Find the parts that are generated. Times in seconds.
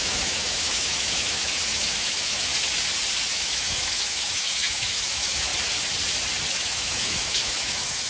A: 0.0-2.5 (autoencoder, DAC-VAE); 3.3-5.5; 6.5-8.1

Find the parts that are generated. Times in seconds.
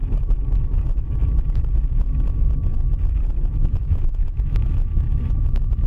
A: 3.6-5.9 (autoencoder, DAC-VAE)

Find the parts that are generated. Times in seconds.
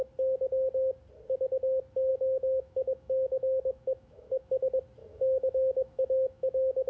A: 2.1-4.5 (autoencoder, DAC-VAE); 5.0-6.9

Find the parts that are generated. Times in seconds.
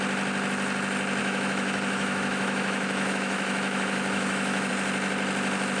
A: 1.2-4.7 (autoencoder, DAC-VAE)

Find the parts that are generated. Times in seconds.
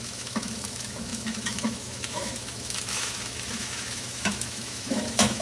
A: 0.0-5.4 (autoencoder, DAC-VAE)